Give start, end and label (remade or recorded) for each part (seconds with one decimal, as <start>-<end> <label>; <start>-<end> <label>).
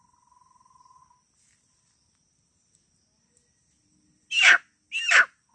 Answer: 0.0-5.5 recorded